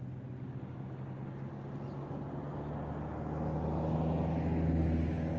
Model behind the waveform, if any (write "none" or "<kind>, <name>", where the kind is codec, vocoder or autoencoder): none